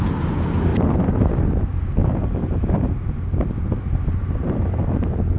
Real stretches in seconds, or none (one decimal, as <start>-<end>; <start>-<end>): 0.0-0.7; 1.6-2.0; 4.2-5.4